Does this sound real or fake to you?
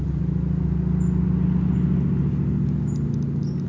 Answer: real